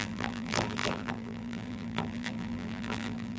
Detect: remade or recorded remade